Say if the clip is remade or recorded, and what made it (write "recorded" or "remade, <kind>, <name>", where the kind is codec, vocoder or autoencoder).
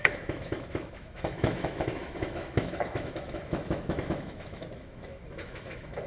remade, autoencoder, DAC-VAE